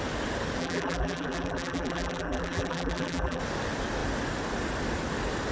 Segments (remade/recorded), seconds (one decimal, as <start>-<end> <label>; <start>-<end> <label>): 0.0-0.6 recorded; 0.6-3.4 remade; 3.4-5.5 recorded